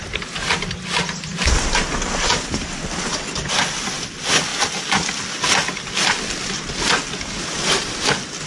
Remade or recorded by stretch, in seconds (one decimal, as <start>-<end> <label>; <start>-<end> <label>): 0.0-8.5 recorded